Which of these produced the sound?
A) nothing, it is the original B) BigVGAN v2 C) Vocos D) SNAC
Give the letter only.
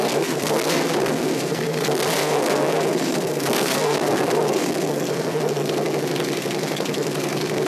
D